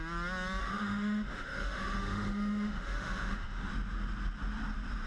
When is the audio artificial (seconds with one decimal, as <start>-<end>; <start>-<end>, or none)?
0.6-3.7